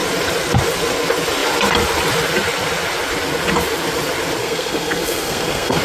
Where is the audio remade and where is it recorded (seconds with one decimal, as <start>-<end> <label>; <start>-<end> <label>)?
0.0-4.4 recorded; 4.4-5.8 remade

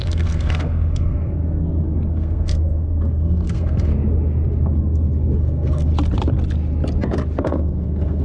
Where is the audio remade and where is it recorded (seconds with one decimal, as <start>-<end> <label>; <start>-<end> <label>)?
0.0-1.4 remade; 1.4-2.1 recorded; 2.1-3.9 remade; 3.9-5.4 recorded; 5.4-5.9 remade; 5.9-7.4 recorded; 7.4-8.2 remade

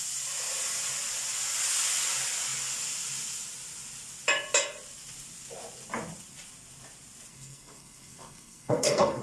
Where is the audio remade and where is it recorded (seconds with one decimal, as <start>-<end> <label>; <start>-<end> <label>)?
0.0-7.3 recorded; 7.3-9.2 remade

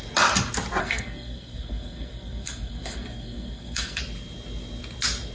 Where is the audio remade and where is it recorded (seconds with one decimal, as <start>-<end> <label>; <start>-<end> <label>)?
0.0-0.8 recorded; 0.8-4.0 remade; 4.0-5.3 recorded